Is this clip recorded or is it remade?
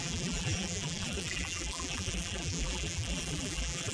remade